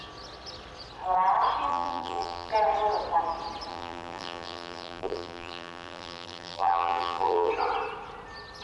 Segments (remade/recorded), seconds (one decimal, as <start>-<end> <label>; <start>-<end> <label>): 0.0-1.7 recorded; 1.7-2.5 remade; 2.5-3.7 recorded; 3.7-7.5 remade; 7.5-8.6 recorded